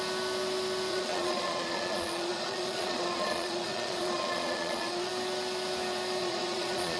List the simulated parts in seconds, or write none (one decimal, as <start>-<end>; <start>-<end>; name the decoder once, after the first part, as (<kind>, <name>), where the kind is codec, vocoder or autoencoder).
0.9-5.1 (vocoder, Vocos); 6.2-7.0